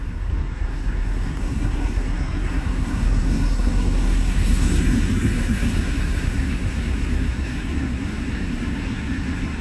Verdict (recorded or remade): remade